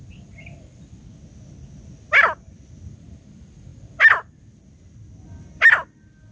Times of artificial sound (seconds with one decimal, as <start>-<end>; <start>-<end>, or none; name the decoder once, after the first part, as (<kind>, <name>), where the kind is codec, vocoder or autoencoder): 2.5-3.7 (vocoder, BigVGAN v2); 4.3-6.3